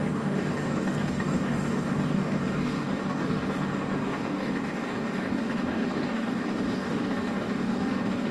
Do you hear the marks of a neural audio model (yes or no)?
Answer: yes